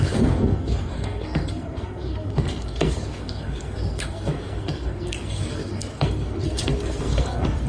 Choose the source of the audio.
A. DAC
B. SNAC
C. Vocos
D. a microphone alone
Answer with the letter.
B